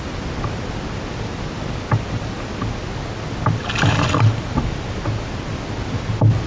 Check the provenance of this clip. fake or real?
real